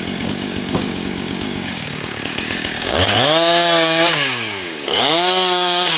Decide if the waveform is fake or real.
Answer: fake